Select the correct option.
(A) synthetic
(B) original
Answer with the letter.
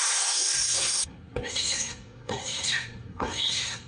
A